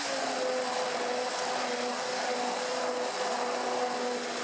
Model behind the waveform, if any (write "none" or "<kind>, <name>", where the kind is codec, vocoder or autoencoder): none